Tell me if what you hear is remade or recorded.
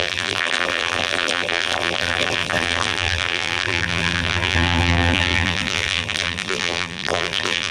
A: remade